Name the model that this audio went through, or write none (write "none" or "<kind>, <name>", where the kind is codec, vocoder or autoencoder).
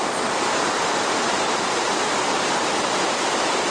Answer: none